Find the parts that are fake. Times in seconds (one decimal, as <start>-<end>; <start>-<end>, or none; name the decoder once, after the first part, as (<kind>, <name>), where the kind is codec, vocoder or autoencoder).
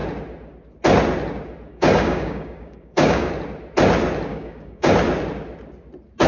1.7-3.3 (codec, DAC); 4.3-4.9